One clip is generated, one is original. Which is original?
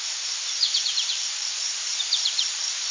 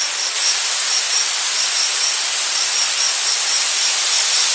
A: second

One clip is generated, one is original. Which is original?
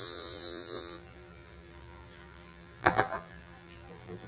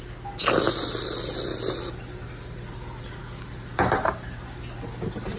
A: second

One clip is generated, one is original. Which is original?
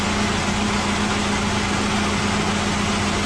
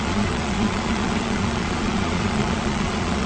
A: first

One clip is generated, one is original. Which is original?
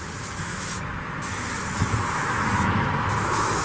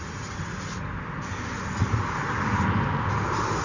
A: second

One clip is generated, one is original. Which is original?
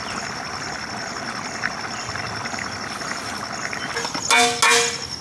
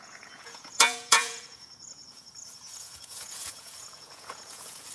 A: first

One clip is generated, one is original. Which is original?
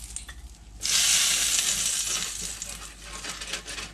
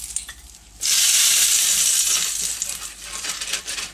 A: first